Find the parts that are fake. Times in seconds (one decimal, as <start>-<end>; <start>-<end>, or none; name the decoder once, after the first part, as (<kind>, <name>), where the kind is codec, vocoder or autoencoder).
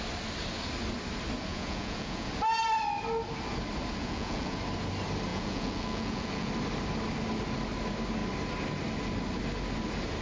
1.5-2.3 (vocoder, Vocos); 4.0-4.6; 5.3-6.5